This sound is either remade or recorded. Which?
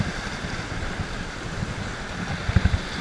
recorded